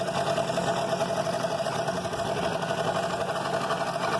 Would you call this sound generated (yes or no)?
no